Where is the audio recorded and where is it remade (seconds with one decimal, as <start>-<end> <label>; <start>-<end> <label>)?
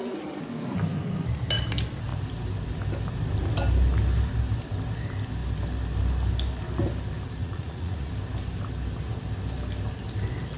0.0-7.4 recorded; 7.4-8.1 remade; 8.1-10.6 recorded